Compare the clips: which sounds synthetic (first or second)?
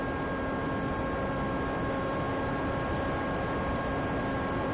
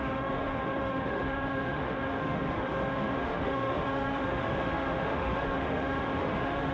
second